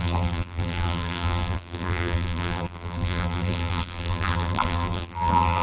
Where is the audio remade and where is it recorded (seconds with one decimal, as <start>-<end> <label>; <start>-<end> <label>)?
0.0-5.6 remade